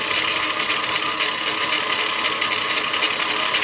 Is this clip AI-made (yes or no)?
no